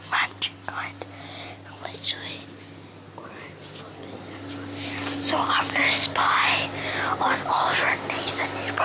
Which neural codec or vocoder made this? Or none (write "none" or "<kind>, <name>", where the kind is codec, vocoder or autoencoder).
none